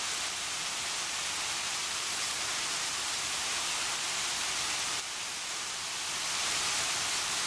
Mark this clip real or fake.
real